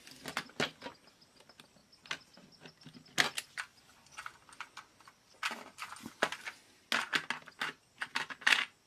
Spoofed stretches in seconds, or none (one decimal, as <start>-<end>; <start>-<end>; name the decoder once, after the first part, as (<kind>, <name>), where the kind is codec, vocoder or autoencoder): none